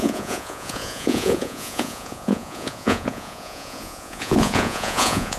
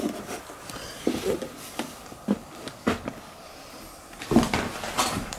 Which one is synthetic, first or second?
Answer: first